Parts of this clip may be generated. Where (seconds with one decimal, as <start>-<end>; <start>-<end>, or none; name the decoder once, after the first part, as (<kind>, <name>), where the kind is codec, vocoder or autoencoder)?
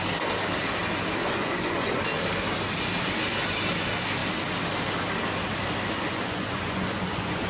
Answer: 1.2-1.9 (vocoder, Vocos); 5.9-7.5